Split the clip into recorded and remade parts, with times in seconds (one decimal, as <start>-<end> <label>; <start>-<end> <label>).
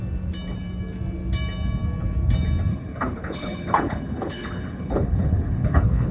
0.0-2.7 recorded; 2.7-6.1 remade